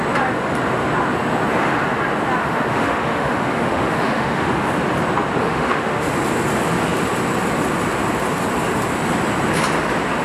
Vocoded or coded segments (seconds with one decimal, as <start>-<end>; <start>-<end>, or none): 2.4-4.6; 5.4-6.1